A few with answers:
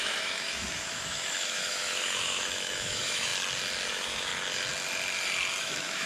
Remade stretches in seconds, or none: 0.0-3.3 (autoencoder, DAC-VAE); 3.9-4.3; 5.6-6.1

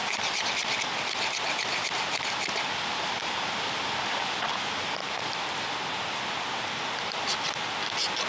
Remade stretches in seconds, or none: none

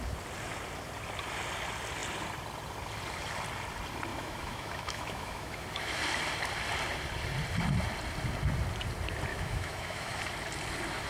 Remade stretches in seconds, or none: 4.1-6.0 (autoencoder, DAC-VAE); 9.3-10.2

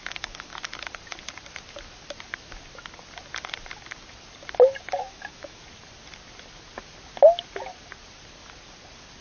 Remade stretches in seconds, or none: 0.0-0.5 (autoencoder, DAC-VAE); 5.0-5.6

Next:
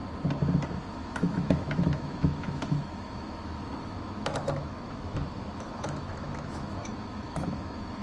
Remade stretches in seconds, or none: 0.8-8.0 (autoencoder, DAC-VAE)